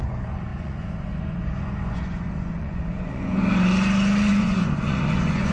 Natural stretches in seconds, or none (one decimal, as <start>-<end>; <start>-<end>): 3.4-4.3